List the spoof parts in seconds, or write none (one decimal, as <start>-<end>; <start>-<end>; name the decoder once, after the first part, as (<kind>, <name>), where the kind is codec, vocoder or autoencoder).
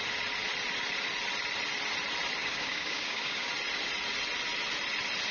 2.4-3.5 (codec, DAC)